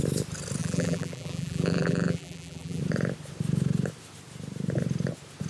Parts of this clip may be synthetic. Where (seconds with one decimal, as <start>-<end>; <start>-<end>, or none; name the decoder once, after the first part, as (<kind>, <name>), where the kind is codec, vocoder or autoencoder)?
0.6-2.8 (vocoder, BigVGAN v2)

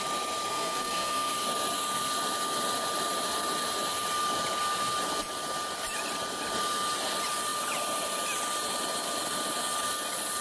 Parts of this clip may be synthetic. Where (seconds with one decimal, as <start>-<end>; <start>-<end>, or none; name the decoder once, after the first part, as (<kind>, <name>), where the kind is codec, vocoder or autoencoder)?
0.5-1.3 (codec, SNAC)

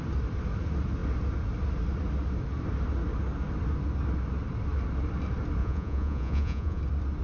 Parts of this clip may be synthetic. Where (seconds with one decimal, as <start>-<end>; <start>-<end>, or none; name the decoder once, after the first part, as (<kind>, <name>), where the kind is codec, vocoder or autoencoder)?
5.6-6.8 (vocoder, Vocos)

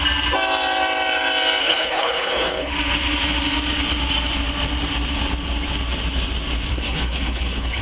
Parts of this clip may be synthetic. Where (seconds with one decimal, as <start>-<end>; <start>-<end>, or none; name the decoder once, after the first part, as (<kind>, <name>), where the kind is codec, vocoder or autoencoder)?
1.6-2.7 (codec, HILCodec); 6.7-7.8